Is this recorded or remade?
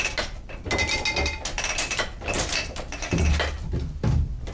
recorded